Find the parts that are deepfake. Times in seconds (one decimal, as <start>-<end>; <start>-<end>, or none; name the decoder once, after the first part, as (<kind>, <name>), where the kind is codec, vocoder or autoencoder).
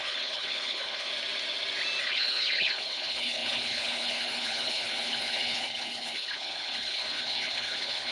0.0-1.1 (codec, HILCodec); 2.0-8.1